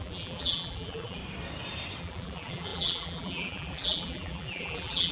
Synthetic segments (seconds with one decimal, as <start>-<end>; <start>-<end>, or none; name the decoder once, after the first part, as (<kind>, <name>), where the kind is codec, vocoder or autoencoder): 0.0-1.2 (vocoder, BigVGAN v2); 2.0-5.1